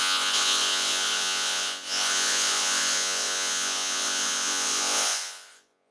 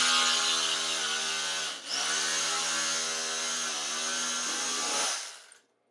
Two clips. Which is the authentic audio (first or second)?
second